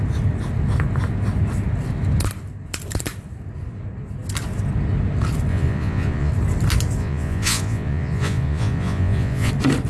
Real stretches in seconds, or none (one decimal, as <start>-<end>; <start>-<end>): 0.0-5.5; 6.3-7.0; 9.5-9.9